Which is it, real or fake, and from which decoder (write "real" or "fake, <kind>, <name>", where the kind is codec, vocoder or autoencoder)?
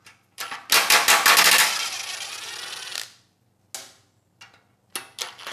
real